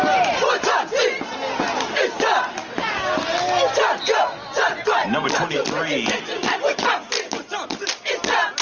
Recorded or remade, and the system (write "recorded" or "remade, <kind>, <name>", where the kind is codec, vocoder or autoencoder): recorded